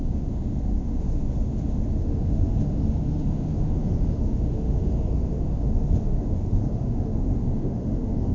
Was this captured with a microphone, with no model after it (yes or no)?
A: no